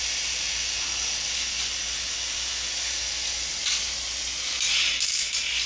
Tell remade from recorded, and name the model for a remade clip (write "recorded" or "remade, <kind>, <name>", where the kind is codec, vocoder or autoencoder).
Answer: recorded